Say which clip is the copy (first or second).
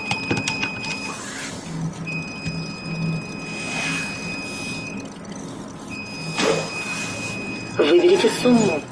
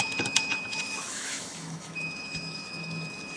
second